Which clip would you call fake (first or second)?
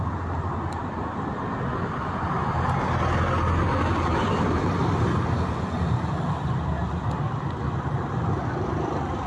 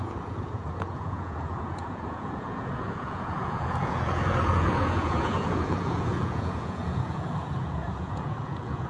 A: second